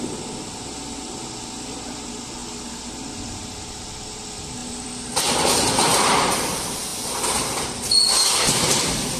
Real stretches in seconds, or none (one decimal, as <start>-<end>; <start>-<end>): 0.0-4.6; 5.2-9.2